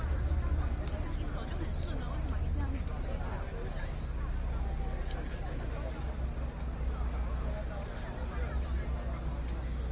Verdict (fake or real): real